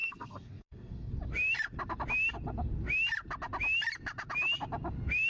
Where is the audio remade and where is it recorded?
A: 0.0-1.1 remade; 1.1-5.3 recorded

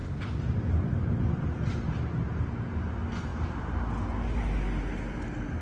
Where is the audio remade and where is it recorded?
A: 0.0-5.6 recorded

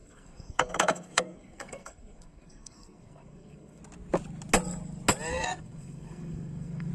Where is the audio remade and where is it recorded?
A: 0.0-3.8 remade; 3.8-5.3 recorded; 5.3-6.9 remade

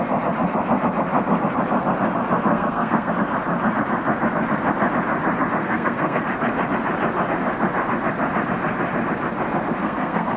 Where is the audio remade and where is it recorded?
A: 0.0-2.5 recorded; 2.5-3.1 remade; 3.1-5.6 recorded; 5.6-6.2 remade; 6.2-9.8 recorded; 9.8-10.4 remade

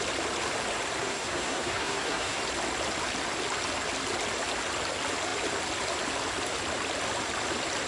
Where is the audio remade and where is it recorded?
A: 0.0-1.0 recorded; 1.0-2.4 remade; 2.4-7.9 recorded

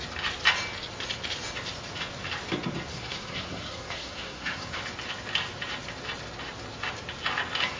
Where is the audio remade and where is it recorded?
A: 0.0-2.9 recorded; 2.9-4.8 remade; 4.8-7.8 recorded